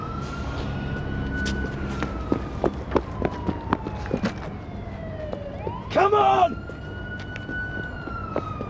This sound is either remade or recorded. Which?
recorded